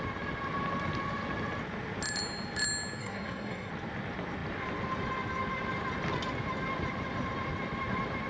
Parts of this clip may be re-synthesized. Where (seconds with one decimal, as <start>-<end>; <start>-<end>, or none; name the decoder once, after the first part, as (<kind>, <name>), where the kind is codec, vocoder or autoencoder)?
3.0-3.7 (codec, SNAC)

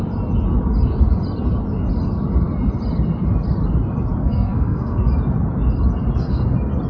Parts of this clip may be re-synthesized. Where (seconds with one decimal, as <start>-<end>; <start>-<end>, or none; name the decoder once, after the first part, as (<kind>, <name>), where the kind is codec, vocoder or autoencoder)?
4.2-5.1 (codec, SNAC)

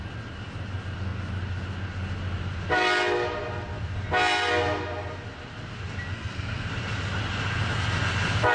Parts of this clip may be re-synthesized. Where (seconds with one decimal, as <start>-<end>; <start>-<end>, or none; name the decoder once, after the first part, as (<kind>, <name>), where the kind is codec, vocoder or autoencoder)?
6.1-6.7 (codec, SNAC)

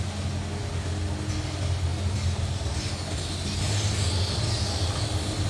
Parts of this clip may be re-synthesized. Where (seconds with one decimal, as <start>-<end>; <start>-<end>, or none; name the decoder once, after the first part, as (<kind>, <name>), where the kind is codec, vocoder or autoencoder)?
none

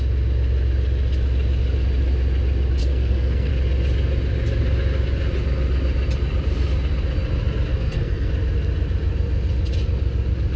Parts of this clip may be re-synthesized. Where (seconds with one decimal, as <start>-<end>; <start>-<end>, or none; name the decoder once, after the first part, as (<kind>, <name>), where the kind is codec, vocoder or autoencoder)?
2.8-3.5 (codec, SNAC); 7.7-8.3